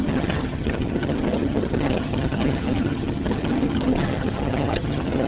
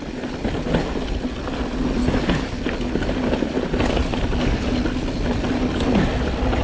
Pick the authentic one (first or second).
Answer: second